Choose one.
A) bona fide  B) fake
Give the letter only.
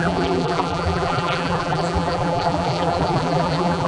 B